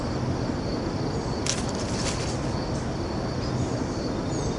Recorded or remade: recorded